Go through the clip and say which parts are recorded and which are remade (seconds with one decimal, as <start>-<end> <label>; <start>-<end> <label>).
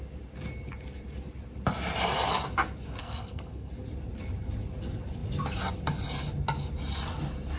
0.0-3.0 recorded; 3.0-3.7 remade; 3.7-7.6 recorded